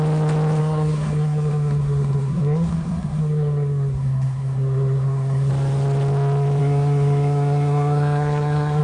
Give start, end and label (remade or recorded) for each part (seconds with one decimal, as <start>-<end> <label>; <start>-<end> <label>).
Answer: 0.0-0.6 recorded; 0.6-5.5 remade; 5.5-6.6 recorded; 6.6-8.8 remade